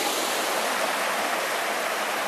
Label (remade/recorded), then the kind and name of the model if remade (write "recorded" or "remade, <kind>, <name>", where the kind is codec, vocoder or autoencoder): recorded